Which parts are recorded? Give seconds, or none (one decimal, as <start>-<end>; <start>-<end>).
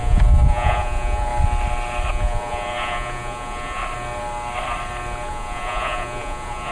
1.3-2.1; 3.8-5.3